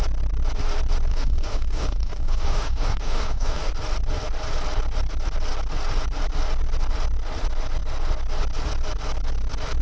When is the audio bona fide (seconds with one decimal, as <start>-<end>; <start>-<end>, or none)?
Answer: 0.0-1.1; 3.7-9.8